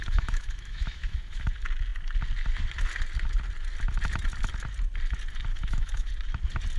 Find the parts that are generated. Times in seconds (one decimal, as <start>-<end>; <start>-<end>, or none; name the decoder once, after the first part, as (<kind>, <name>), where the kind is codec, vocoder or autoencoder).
0.0-1.5 (autoencoder, DAC-VAE); 5.5-6.1